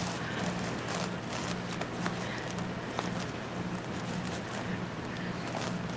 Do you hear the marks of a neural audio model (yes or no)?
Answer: no